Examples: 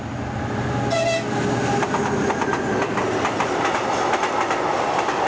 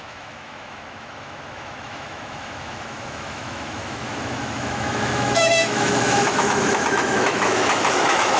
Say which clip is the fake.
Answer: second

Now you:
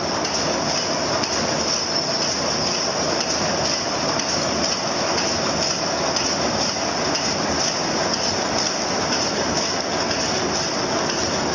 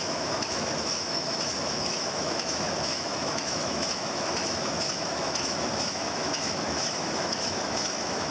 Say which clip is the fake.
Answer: second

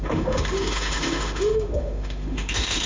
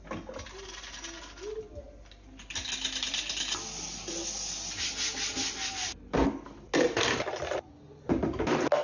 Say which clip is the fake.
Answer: first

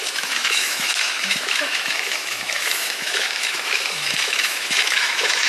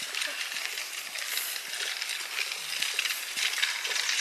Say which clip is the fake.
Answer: first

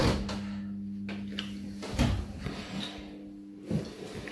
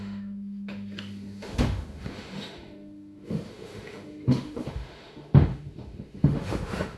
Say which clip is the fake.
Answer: second